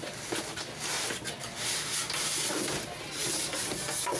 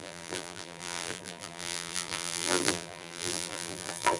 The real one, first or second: first